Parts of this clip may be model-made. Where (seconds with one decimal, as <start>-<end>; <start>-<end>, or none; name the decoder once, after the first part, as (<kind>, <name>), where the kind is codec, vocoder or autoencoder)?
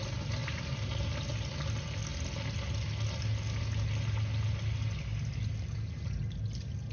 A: none